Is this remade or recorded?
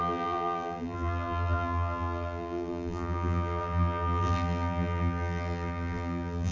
remade